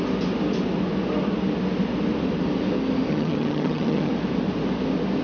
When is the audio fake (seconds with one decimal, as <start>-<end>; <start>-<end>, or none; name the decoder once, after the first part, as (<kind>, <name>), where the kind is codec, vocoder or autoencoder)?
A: 3.1-4.1 (vocoder, HiFi-GAN)